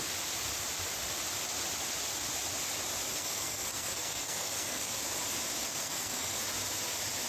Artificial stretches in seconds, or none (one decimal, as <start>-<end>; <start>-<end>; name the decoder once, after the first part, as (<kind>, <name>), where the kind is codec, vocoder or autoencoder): 3.1-5.0 (codec, SNAC); 5.6-6.4